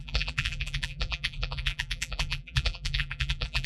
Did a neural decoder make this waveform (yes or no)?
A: yes